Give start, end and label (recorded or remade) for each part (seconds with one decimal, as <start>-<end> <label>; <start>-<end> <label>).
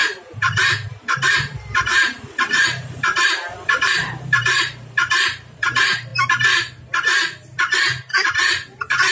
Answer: 0.0-6.1 remade; 6.1-9.1 recorded